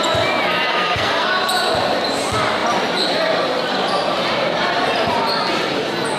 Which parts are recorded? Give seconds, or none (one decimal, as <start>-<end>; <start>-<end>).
0.0-0.7; 1.3-6.2